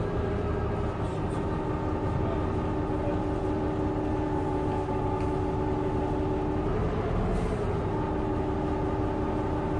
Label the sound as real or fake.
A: real